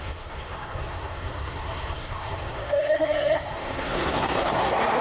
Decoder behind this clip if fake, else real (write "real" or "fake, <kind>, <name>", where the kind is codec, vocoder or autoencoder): fake, codec, SNAC